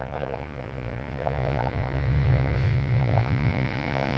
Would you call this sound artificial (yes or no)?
yes